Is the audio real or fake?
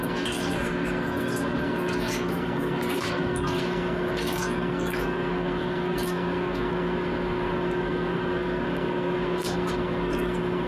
fake